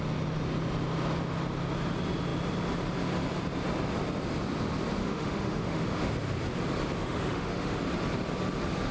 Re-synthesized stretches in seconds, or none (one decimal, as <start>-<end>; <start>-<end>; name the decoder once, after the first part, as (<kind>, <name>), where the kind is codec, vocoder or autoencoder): 5.0-6.1 (autoencoder, DAC-VAE); 7.0-7.8